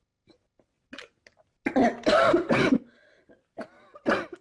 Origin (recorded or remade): recorded